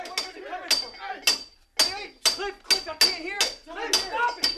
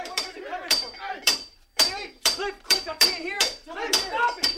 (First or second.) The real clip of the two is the first